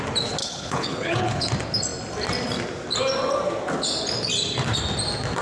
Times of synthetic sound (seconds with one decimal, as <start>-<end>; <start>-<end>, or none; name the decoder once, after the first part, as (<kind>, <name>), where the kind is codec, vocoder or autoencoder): 0.4-1.5 (codec, HILCodec)